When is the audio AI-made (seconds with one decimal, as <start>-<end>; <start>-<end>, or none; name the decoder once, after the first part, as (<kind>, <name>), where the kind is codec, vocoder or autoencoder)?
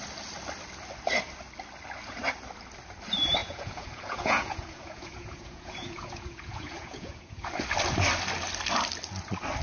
3.4-7.5 (vocoder, Vocos)